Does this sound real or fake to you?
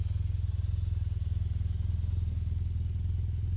real